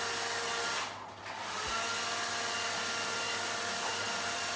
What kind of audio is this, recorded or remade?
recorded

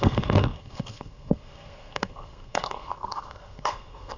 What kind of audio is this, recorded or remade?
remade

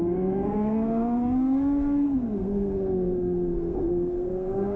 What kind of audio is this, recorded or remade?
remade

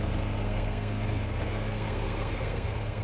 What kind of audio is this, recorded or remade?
remade